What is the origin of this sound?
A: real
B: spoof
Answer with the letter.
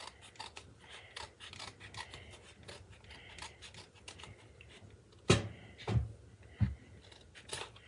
A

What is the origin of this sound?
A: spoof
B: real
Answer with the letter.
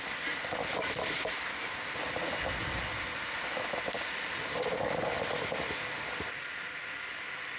B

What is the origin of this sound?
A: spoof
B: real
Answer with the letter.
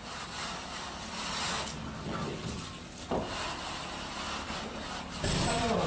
B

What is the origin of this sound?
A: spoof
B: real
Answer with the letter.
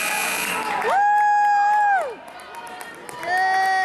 B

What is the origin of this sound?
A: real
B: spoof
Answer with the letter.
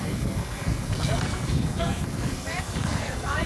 B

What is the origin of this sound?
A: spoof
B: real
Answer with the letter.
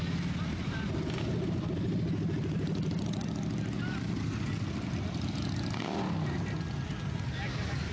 B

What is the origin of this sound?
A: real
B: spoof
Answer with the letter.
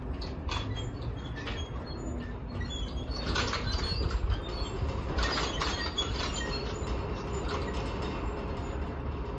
A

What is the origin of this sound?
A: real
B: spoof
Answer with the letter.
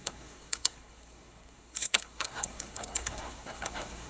B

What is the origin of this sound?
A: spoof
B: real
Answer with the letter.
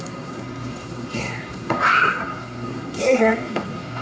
A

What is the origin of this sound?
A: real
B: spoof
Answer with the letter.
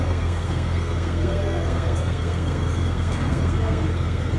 B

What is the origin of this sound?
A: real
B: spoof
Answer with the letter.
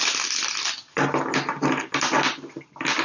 A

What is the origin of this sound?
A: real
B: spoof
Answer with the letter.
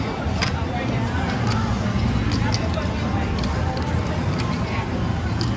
A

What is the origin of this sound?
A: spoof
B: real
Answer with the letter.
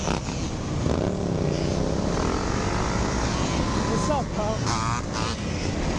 B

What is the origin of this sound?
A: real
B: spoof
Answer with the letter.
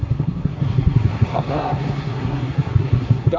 B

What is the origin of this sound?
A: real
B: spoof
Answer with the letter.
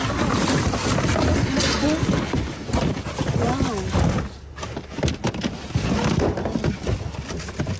A